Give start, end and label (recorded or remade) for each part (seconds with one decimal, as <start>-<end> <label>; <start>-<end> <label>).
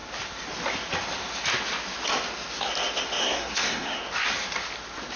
0.0-3.2 recorded; 3.2-4.0 remade; 4.0-5.2 recorded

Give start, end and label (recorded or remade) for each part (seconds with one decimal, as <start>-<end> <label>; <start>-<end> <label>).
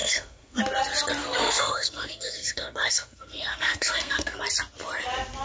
0.0-0.6 remade; 0.6-1.2 recorded; 1.2-4.4 remade; 4.4-5.4 recorded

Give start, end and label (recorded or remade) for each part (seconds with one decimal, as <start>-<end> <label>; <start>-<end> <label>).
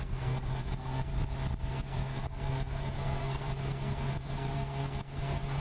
0.0-1.1 remade; 1.1-1.6 recorded; 1.6-5.6 remade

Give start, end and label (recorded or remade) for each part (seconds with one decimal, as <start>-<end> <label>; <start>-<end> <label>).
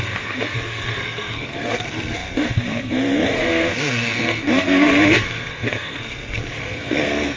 0.0-7.4 remade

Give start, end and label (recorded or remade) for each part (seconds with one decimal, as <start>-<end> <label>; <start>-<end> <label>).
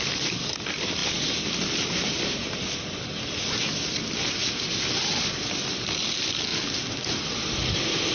0.0-8.1 recorded